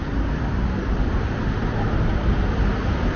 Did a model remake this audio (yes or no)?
no